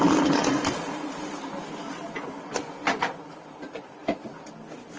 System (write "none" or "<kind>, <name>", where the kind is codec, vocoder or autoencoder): none